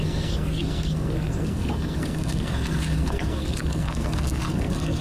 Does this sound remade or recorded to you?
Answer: remade